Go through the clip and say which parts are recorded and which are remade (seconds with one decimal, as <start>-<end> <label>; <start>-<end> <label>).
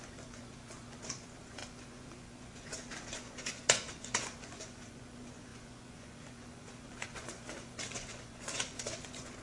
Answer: 0.0-9.4 remade